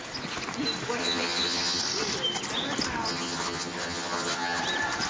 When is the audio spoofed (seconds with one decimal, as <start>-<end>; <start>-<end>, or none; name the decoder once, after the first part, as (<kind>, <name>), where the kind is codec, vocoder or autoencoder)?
1.0-1.8 (vocoder, HiFi-GAN); 3.1-4.6